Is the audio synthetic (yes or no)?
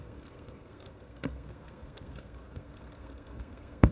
yes